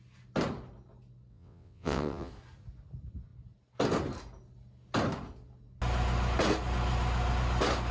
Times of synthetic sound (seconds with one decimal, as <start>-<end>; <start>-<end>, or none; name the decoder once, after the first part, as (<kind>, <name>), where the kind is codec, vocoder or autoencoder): 1.3-2.3 (vocoder, WaveNeXt)